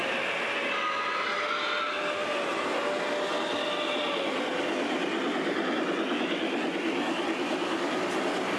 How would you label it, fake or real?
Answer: real